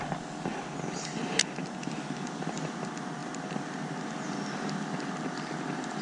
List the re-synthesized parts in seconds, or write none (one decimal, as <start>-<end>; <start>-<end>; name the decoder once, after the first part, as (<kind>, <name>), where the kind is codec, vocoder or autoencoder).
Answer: none